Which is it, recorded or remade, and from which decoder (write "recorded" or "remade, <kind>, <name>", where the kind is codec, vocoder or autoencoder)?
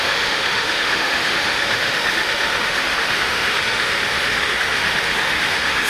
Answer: remade, autoencoder, DAC-VAE